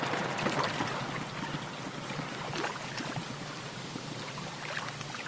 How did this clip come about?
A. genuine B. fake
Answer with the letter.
A